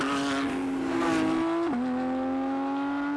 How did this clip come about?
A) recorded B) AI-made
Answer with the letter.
A